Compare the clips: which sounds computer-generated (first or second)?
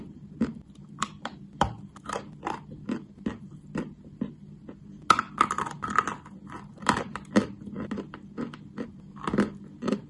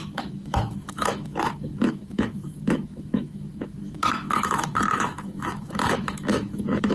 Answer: second